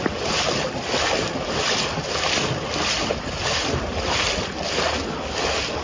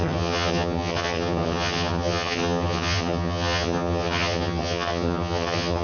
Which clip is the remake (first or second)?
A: second